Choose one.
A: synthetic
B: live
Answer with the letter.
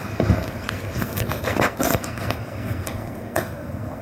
A